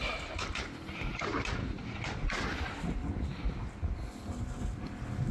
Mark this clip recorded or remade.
recorded